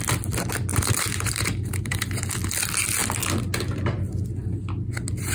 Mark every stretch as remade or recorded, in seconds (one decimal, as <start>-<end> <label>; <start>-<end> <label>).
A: 0.0-0.7 recorded; 0.7-2.3 remade; 2.3-5.3 recorded